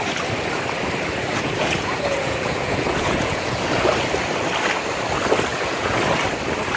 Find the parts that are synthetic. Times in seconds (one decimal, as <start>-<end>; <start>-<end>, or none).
1.3-3.9; 5.5-6.0

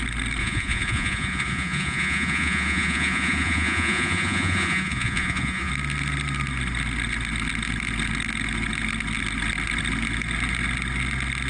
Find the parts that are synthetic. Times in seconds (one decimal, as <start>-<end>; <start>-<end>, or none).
0.4-5.7

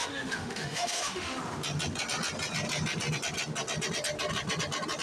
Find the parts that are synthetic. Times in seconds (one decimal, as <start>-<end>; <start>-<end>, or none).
0.0-1.4

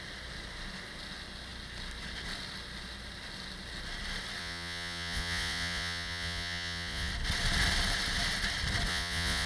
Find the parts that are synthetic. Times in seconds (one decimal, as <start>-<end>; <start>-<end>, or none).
4.4-7.1; 8.9-9.5

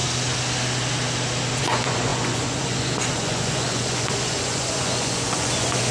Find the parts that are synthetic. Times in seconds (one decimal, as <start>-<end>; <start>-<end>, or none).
1.6-5.9